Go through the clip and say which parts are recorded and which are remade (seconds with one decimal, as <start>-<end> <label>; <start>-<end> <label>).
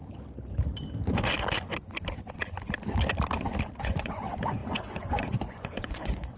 0.0-3.8 recorded; 3.8-6.4 remade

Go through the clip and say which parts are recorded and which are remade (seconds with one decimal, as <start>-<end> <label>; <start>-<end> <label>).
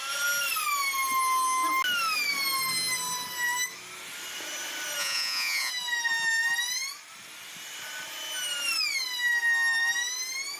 0.0-5.0 recorded; 5.0-5.7 remade; 5.7-10.6 recorded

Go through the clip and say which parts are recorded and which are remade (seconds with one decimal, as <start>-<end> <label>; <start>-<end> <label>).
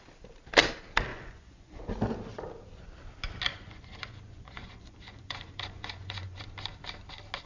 0.0-1.1 recorded; 1.1-1.8 remade; 1.8-3.5 recorded; 3.5-6.4 remade; 6.4-7.5 recorded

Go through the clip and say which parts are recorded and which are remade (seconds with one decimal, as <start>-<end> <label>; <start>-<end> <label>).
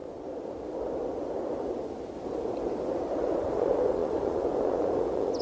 0.0-3.2 recorded; 3.2-5.4 remade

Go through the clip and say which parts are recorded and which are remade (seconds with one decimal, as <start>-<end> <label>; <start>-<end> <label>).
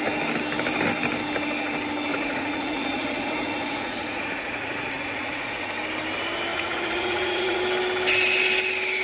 0.0-2.1 recorded; 2.1-5.7 remade; 5.7-6.5 recorded; 6.5-7.6 remade; 7.6-9.0 recorded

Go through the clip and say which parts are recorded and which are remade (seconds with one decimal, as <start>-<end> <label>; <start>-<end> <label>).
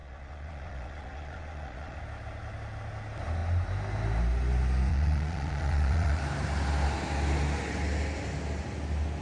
0.0-2.0 remade; 2.0-4.9 recorded; 4.9-6.2 remade; 6.2-9.2 recorded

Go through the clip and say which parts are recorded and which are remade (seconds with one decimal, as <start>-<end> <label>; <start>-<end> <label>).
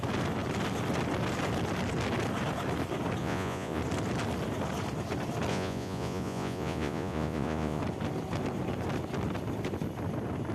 0.0-3.2 recorded; 3.2-3.8 remade; 3.8-5.5 recorded; 5.5-7.8 remade; 7.8-10.5 recorded